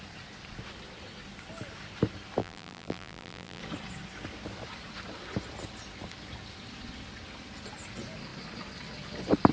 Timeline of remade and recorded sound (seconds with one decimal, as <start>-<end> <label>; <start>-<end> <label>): 0.0-2.4 recorded; 2.4-3.6 remade; 3.6-9.5 recorded